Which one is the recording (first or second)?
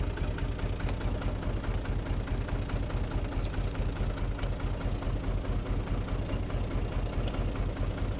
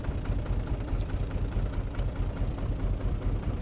first